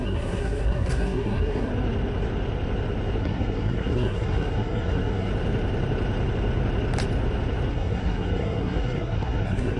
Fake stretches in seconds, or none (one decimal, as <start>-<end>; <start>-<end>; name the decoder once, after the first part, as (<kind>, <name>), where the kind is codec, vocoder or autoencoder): 0.0-1.7 (codec, SNAC); 3.2-5.3; 7.7-9.8